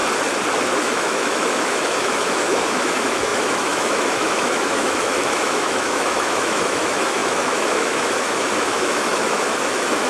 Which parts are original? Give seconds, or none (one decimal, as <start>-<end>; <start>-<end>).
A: 0.0-0.8

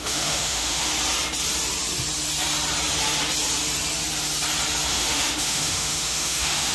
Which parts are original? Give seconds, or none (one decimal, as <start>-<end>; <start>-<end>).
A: 0.9-4.9

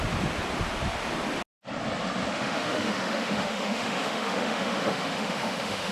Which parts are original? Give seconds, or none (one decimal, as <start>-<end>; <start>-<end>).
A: 0.0-2.3

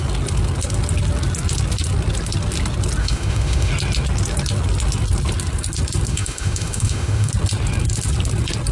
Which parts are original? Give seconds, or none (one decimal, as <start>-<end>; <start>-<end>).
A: 0.0-3.0; 3.7-6.1; 7.3-8.7

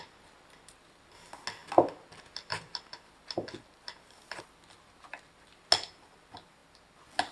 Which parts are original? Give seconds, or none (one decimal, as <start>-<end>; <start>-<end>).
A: 0.0-7.3

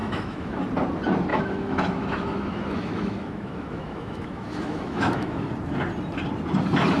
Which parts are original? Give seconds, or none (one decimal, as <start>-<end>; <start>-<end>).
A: 0.6-1.3; 5.5-7.0

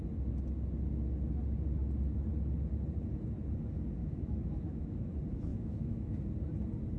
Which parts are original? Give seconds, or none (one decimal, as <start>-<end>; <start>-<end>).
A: 0.0-4.0; 5.1-5.5; 6.2-7.0